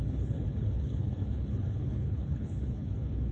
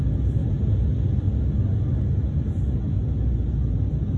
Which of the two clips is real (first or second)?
second